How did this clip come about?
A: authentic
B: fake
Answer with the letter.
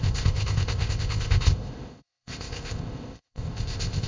B